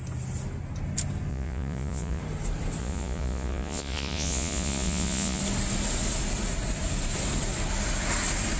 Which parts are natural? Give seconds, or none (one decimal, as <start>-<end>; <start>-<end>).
0.0-1.3; 2.2-2.8; 5.4-8.6